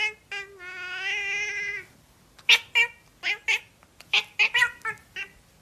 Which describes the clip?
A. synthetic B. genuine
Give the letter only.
B